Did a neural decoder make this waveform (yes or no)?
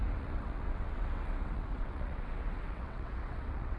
yes